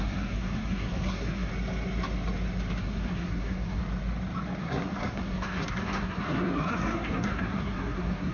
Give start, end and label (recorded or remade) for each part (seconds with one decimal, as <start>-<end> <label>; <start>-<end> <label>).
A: 0.0-1.5 remade; 1.5-2.8 recorded; 2.8-3.8 remade; 3.8-4.6 recorded; 4.6-8.3 remade